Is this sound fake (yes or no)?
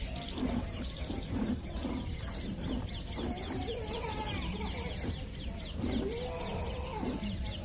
no